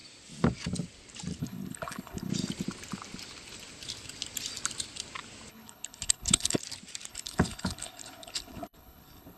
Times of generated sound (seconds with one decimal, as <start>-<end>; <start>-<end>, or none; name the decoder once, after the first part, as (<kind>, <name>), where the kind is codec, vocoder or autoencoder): 1.4-2.3 (codec, HILCodec); 5.5-6.6; 7.1-9.4